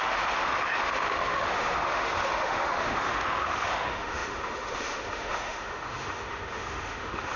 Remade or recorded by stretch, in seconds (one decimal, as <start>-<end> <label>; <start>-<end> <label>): 0.0-7.4 remade